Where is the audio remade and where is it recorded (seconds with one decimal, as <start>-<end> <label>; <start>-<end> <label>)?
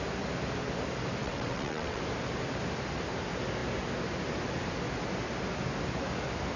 0.0-1.2 recorded; 1.2-2.0 remade; 2.0-6.6 recorded